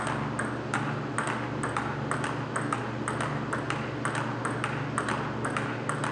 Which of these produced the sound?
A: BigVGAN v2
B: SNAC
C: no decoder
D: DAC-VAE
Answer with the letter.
C